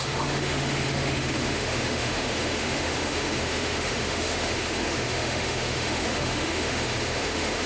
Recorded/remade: remade